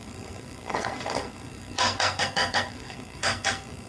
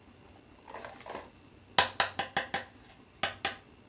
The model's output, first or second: first